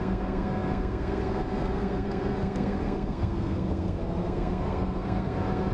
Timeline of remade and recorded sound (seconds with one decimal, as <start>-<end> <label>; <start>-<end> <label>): 0.0-5.7 remade